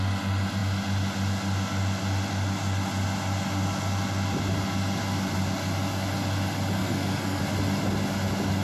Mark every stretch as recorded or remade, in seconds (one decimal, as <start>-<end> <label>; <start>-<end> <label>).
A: 0.0-6.8 recorded; 6.8-7.4 remade; 7.4-8.6 recorded